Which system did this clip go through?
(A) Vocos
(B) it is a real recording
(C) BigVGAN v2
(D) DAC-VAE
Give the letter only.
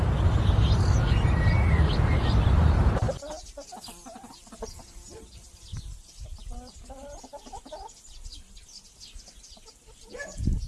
B